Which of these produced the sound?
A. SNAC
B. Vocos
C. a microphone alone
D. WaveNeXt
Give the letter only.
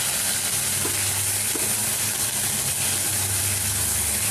C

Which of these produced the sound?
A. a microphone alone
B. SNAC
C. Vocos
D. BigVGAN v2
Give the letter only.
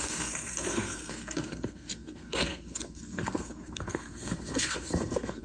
B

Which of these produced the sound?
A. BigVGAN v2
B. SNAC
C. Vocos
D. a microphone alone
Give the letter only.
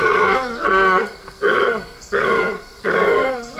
B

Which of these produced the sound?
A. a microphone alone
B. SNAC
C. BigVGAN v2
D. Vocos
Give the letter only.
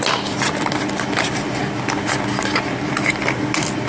A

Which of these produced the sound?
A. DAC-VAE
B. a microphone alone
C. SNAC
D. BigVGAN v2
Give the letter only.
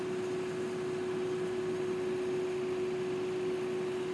B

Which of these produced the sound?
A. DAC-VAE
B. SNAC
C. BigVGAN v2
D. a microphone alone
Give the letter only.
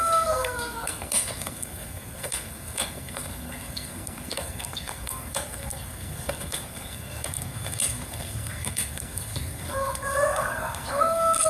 B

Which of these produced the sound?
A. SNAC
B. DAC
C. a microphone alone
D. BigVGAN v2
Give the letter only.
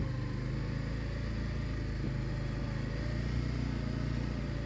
C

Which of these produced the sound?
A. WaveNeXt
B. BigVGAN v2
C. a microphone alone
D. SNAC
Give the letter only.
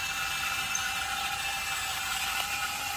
C